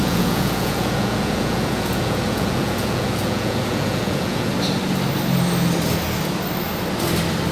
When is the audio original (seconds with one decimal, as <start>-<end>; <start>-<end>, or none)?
4.5-7.5